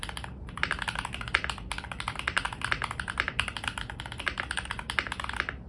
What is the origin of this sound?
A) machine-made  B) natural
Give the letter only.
B